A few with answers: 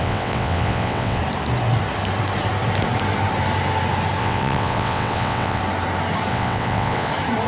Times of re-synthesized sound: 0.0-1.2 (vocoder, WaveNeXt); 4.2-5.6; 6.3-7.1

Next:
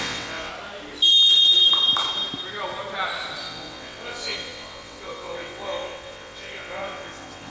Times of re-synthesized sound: 0.0-0.5 (vocoder, WaveNeXt); 3.4-7.5

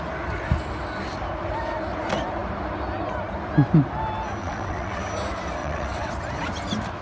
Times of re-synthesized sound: 4.4-5.0 (vocoder, WaveNeXt); 5.6-6.1

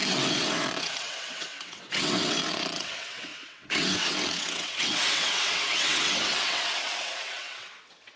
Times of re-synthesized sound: 0.0-8.2 (vocoder, WaveNeXt)

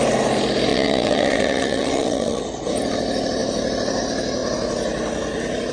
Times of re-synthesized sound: 0.7-2.4 (vocoder, WaveNeXt)

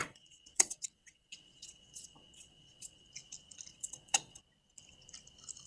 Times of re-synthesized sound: 0.0-3.1 (vocoder, WaveNeXt); 3.7-4.4

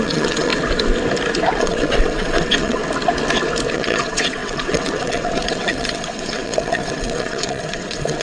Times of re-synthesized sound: 0.0-0.5 (vocoder, WaveNeXt); 1.6-2.8; 3.7-8.2

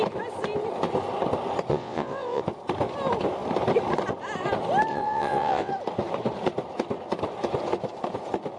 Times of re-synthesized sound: 1.7-2.4 (vocoder, WaveNeXt); 4.9-5.7